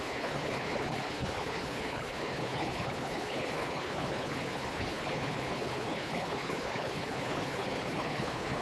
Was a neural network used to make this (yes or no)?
yes